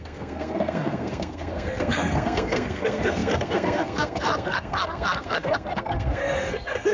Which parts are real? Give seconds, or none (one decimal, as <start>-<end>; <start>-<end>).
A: none